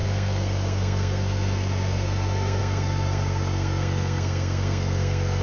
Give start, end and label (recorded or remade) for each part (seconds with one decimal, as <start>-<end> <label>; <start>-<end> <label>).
0.0-5.4 remade